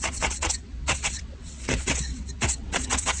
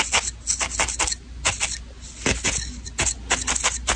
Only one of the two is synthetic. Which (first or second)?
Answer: first